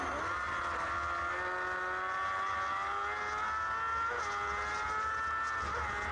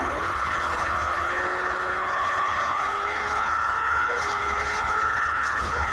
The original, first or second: first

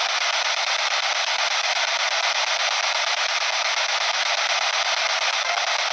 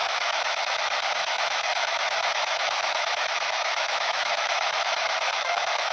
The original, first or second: first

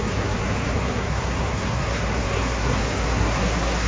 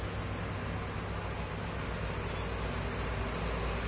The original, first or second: second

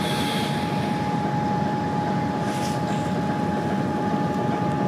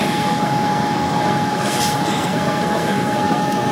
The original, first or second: first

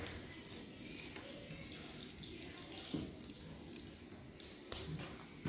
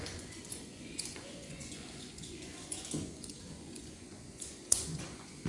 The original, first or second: first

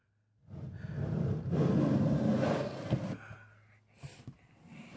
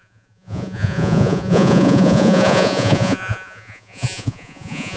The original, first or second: first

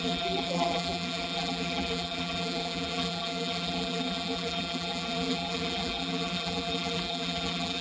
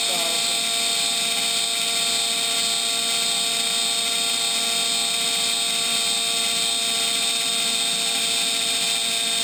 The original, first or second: second